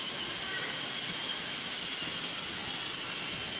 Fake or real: real